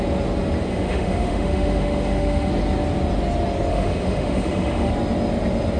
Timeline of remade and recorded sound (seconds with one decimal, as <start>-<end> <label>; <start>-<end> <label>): 0.0-0.7 recorded; 0.7-2.5 remade; 2.5-3.7 recorded; 3.7-4.9 remade; 4.9-5.8 recorded